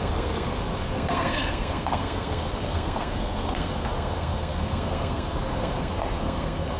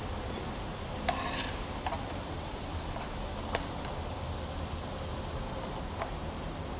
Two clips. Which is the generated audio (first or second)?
first